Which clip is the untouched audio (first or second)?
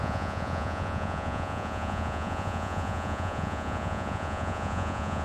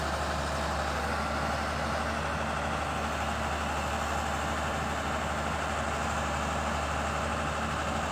second